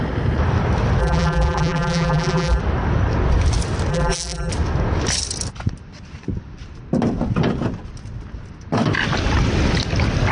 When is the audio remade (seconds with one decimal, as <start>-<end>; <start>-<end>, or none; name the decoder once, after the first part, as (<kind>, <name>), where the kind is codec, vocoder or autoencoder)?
1.0-2.6 (vocoder, BigVGAN v2); 3.9-4.5

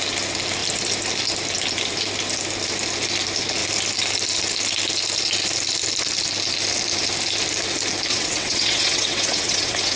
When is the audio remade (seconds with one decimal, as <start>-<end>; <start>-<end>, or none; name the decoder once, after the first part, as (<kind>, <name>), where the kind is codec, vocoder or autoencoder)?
8.1-10.0 (vocoder, WaveNeXt)

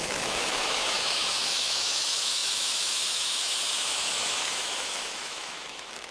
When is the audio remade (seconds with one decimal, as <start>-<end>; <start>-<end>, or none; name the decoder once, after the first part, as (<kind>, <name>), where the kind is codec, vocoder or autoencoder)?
0.0-6.1 (autoencoder, DAC-VAE)

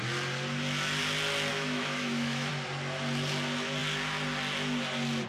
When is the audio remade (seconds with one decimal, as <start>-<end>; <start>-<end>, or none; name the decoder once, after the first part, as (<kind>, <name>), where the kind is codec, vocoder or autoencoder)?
1.5-2.5 (autoencoder, DAC-VAE)